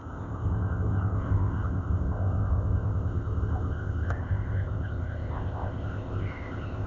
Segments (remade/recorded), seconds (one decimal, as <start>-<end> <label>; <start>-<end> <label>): 0.0-6.9 remade